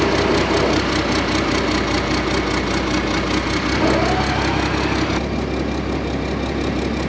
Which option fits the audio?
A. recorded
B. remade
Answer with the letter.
A